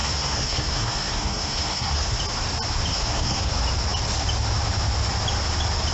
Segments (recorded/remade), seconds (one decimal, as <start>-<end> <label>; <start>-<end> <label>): 0.0-2.2 remade; 2.2-2.9 recorded; 2.9-3.5 remade; 3.5-5.9 recorded